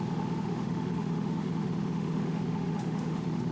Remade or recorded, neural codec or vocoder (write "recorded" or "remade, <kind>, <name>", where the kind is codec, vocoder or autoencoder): remade, autoencoder, DAC-VAE